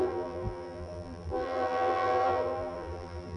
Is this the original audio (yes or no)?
no